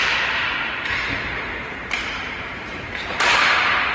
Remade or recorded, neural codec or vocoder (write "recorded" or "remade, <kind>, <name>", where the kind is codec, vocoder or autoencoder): remade, vocoder, BigVGAN v2